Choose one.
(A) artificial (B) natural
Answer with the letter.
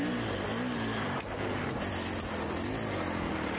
B